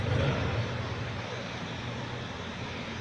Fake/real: real